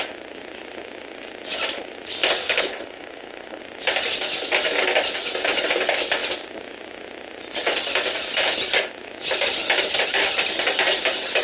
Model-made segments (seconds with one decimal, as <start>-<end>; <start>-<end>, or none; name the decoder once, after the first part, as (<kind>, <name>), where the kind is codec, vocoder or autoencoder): 2.4-3.6 (codec, HILCodec)